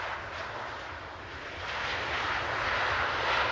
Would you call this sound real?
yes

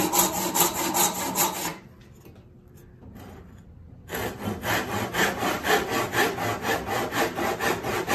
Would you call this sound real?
yes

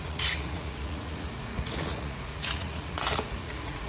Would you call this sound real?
no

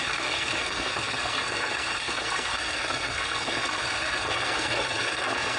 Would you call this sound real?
no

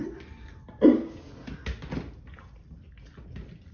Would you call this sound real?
yes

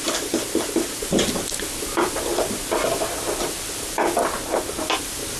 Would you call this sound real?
yes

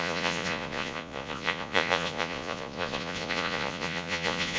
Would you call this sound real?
no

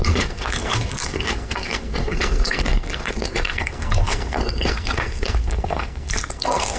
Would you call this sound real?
no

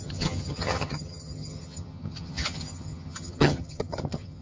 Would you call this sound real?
no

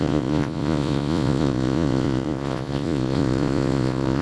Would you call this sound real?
no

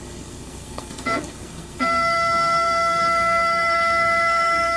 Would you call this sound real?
no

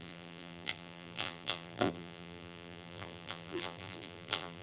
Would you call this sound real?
no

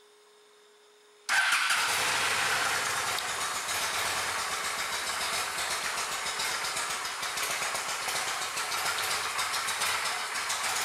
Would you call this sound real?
yes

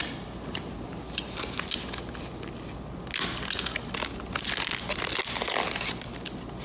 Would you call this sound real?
yes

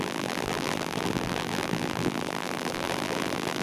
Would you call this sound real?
no